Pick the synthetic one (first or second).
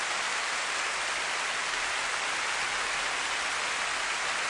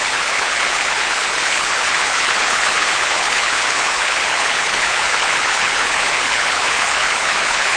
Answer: second